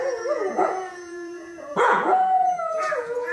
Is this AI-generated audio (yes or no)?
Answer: yes